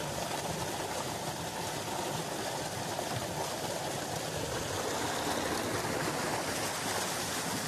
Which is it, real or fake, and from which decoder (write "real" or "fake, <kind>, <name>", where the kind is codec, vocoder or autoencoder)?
real